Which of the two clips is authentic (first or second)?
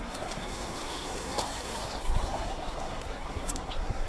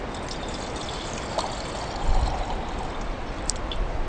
second